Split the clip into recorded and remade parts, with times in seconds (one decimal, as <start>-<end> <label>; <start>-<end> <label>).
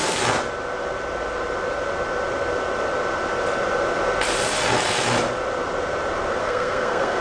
0.0-6.4 recorded; 6.4-7.2 remade